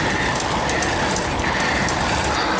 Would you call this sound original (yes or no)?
yes